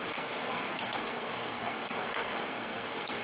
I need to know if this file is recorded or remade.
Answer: remade